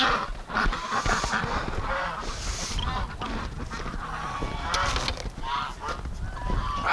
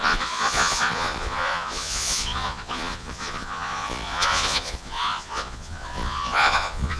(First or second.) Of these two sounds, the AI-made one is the second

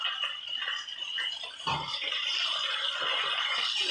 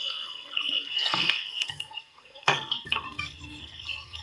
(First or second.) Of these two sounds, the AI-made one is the second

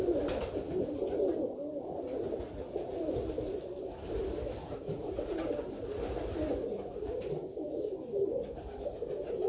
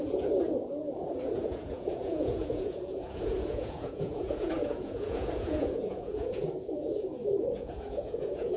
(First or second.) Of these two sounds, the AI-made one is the second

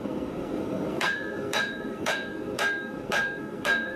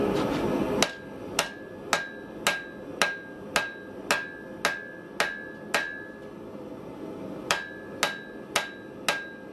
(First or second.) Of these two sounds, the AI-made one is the first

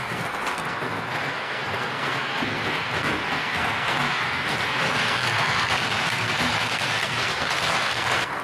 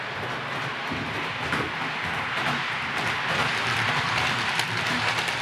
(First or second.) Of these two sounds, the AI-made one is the first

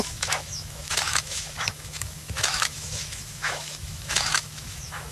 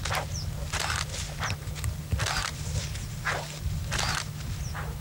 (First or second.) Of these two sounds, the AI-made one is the first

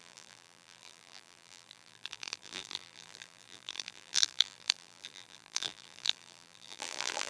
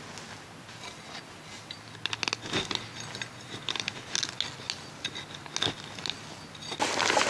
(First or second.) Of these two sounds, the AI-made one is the first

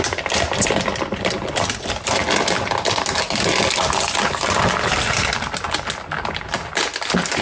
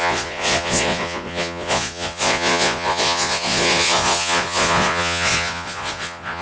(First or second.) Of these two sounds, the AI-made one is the second